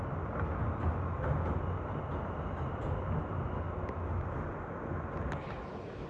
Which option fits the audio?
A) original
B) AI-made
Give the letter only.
A